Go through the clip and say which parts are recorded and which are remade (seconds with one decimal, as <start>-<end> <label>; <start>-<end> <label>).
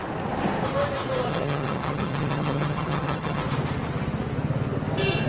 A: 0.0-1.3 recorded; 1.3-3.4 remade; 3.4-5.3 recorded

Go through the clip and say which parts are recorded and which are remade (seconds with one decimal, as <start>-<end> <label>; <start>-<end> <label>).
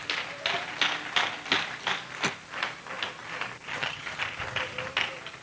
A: 0.0-3.7 recorded; 3.7-4.2 remade; 4.2-5.4 recorded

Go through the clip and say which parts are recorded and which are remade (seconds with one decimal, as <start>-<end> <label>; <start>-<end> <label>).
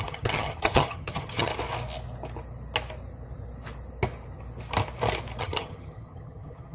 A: 0.0-1.5 remade; 1.5-5.4 recorded; 5.4-6.7 remade